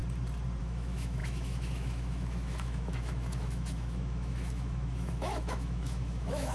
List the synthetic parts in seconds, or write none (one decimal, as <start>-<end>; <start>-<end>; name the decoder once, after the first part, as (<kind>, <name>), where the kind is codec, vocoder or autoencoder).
0.6-6.5 (autoencoder, DAC-VAE)